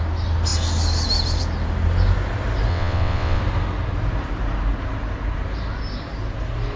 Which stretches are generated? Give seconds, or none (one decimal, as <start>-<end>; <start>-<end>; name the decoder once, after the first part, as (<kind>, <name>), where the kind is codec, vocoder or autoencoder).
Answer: 2.7-3.4 (vocoder, WaveNeXt)